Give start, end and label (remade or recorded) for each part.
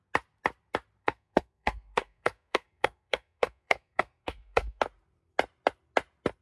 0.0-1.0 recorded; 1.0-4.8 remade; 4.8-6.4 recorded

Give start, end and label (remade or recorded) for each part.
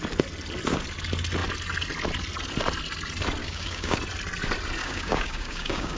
0.0-3.4 recorded; 3.4-4.0 remade; 4.0-4.8 recorded; 4.8-6.0 remade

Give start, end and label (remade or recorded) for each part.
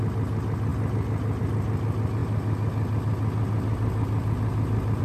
0.0-5.0 recorded